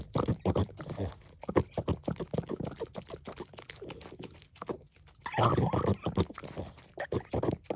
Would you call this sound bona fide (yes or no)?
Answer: yes